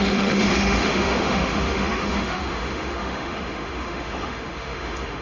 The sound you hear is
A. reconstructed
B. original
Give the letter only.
A